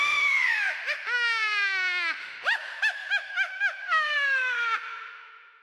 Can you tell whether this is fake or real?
fake